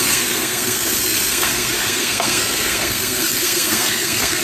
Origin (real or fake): fake